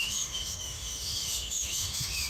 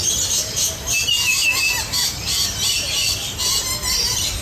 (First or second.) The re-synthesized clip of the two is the first